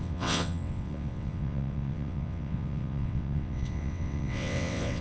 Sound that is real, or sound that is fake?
fake